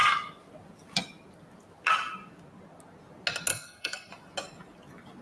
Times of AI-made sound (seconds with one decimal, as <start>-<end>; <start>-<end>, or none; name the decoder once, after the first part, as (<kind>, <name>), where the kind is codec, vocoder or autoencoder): 3.5-4.1 (codec, SNAC)